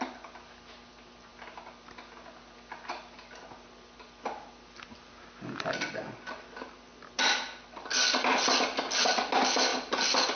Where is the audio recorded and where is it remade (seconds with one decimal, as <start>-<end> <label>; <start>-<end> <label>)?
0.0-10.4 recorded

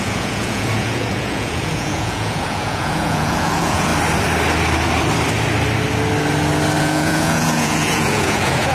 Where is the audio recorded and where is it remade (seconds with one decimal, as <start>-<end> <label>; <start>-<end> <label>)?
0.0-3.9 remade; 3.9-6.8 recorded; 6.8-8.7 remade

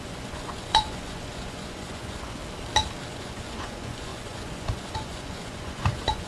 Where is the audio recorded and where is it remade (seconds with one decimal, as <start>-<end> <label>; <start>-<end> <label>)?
0.0-2.4 remade; 2.4-3.1 recorded; 3.1-6.3 remade

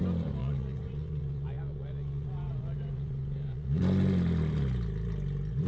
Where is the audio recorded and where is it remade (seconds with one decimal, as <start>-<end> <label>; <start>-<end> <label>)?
0.0-0.4 recorded; 0.4-3.8 remade; 3.8-5.7 recorded

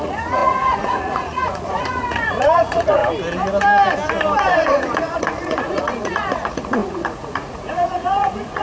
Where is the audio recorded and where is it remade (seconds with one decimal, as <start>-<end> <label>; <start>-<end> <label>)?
0.0-3.0 remade; 3.0-4.4 recorded; 4.4-8.6 remade

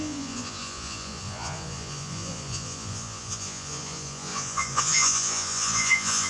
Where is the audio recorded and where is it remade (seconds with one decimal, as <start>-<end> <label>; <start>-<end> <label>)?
0.0-6.3 remade

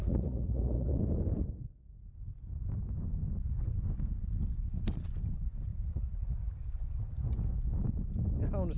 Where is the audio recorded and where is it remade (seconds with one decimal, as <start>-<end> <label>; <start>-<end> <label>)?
0.0-1.0 remade; 1.0-5.7 recorded; 5.7-6.5 remade; 6.5-8.8 recorded